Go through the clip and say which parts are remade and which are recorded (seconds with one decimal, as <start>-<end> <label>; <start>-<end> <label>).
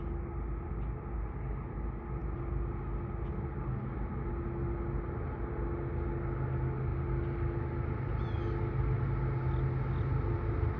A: 0.0-10.8 recorded